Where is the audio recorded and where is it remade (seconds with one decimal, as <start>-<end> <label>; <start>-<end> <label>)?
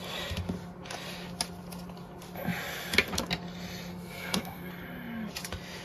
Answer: 0.0-3.9 recorded; 3.9-4.7 remade; 4.7-5.8 recorded